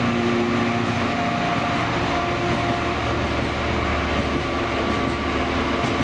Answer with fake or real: real